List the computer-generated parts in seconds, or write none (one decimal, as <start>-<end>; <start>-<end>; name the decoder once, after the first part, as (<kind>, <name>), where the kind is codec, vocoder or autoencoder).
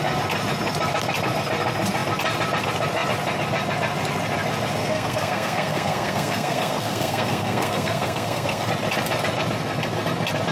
4.8-8.7 (codec, SNAC)